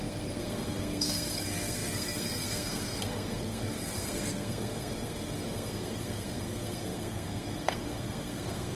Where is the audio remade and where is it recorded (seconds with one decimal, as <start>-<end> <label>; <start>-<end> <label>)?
0.0-8.7 remade